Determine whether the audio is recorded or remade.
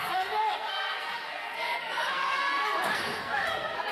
remade